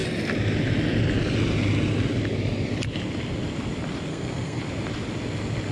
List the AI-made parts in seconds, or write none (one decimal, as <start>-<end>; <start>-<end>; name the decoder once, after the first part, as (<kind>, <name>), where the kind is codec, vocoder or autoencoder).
4.1-4.6 (codec, SNAC)